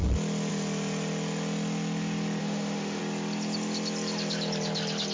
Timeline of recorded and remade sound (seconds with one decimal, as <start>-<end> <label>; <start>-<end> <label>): 0.0-2.4 recorded; 2.4-3.0 remade; 3.0-5.1 recorded